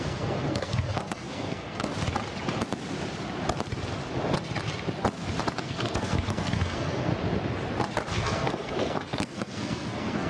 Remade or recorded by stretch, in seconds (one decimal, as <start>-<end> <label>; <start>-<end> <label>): 0.0-1.9 remade; 1.9-5.6 recorded; 5.6-7.1 remade; 7.1-8.1 recorded; 8.1-10.3 remade